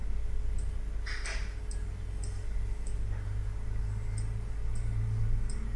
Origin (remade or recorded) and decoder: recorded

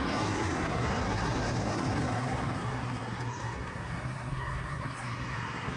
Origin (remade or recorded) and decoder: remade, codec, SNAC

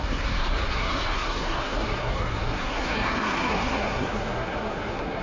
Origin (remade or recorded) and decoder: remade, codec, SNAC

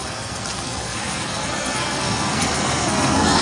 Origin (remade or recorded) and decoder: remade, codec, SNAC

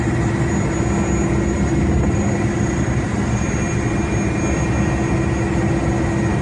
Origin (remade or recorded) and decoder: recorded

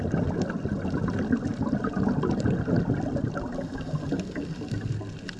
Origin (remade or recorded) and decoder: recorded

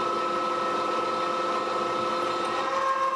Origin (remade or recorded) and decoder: recorded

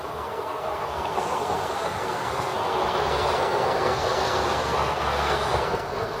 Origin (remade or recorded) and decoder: remade, codec, SNAC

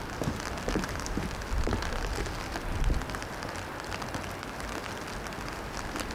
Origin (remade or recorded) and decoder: recorded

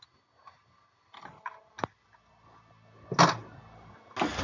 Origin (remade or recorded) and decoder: recorded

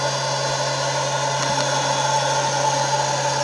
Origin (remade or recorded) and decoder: recorded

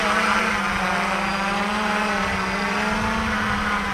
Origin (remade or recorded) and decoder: recorded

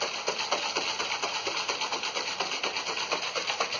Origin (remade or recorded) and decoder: recorded